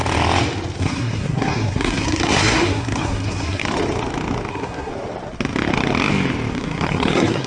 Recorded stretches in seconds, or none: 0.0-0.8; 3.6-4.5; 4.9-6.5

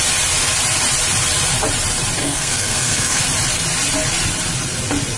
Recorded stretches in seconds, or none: 0.0-2.2; 3.2-5.2

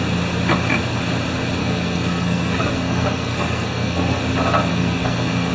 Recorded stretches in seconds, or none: 0.0-1.6; 4.2-4.7

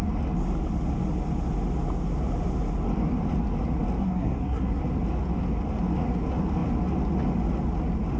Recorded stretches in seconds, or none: 0.0-4.0; 4.8-8.2

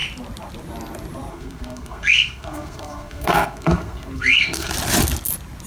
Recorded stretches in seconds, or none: 0.0-1.3; 4.7-5.7

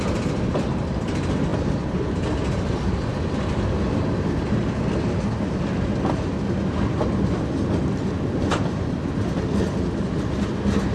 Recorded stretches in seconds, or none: 0.0-10.9